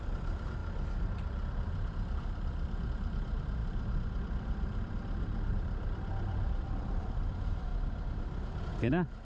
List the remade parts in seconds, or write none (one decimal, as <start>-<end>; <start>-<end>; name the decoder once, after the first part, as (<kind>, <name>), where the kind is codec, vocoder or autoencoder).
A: 0.0-0.6 (vocoder, BigVGAN v2); 2.9-7.7; 8.6-9.2